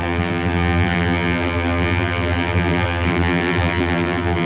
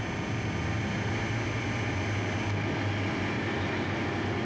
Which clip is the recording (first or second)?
second